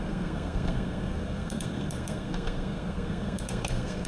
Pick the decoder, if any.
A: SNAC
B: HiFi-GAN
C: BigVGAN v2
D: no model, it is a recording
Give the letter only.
A